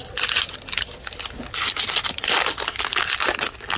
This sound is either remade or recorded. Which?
recorded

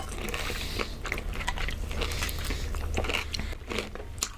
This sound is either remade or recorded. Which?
recorded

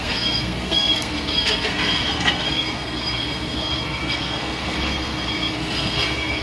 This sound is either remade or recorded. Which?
remade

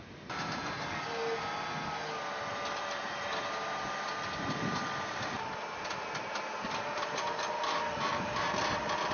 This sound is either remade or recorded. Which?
recorded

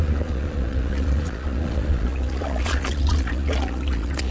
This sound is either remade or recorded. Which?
remade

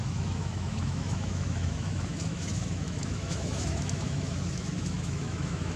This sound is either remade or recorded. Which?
remade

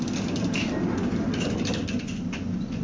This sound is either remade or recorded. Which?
recorded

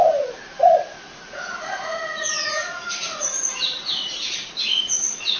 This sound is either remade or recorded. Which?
remade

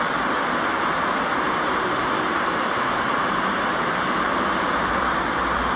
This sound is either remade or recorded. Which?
remade